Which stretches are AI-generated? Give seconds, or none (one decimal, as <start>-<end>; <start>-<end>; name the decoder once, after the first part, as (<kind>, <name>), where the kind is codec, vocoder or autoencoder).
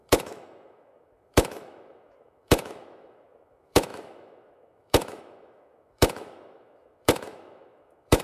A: 0.0-8.2 (autoencoder, DAC-VAE)